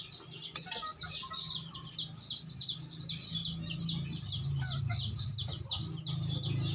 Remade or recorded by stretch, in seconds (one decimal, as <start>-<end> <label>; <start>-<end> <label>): 0.0-6.7 recorded